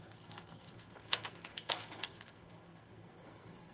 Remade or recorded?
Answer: remade